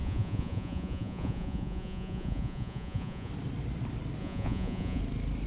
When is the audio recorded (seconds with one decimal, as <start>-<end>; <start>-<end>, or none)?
3.3-4.2; 5.0-5.5

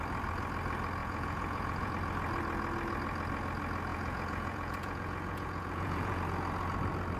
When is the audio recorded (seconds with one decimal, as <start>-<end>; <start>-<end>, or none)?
0.0-1.0; 1.9-3.9; 6.2-7.2

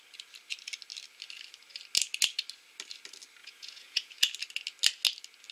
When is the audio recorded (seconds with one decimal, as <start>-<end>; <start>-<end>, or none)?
0.0-3.4; 4.1-5.5

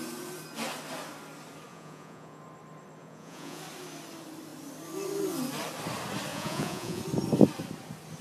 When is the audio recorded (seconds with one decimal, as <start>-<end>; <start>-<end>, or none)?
0.0-1.7; 2.4-3.0; 3.6-6.3; 7.0-8.2

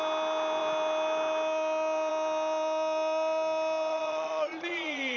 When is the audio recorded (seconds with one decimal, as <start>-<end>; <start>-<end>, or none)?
0.0-3.9